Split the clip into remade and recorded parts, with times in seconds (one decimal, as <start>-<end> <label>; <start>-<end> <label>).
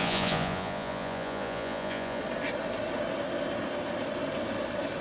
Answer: 0.0-2.2 remade; 2.2-5.0 recorded